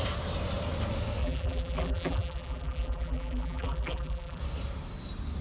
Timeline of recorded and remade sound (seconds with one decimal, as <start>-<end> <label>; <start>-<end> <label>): 0.0-1.2 recorded; 1.2-4.4 remade; 4.4-5.4 recorded